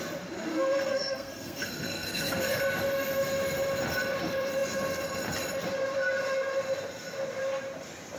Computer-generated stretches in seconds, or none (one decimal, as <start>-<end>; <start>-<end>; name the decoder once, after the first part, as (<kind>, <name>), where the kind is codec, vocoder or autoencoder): 0.5-2.6 (codec, SNAC)